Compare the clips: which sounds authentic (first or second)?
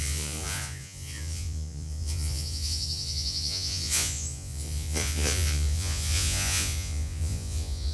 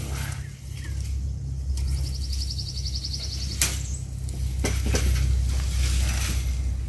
second